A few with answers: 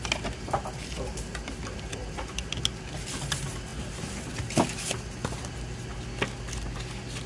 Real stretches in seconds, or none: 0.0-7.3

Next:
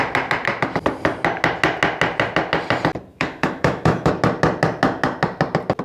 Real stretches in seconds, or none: 0.0-3.1; 4.1-5.8

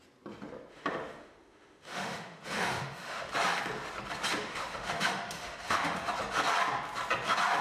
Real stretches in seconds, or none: 0.0-0.7; 3.3-4.4; 6.1-7.6

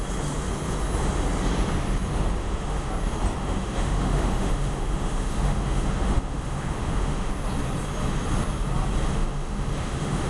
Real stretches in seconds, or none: 0.0-2.4; 2.9-3.4; 7.3-9.1

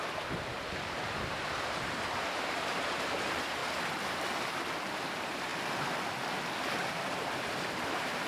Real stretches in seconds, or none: 3.6-4.9; 5.5-7.2

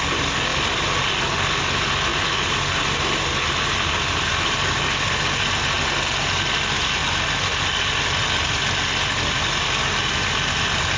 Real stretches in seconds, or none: 0.0-0.5; 1.1-7.0; 7.6-11.0

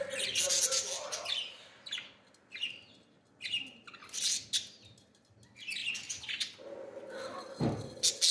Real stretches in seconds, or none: 0.0-8.3

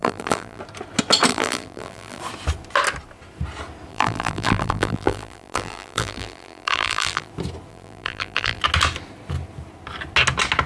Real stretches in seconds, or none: 0.6-1.3; 2.2-3.9; 7.3-7.7; 8.6-10.7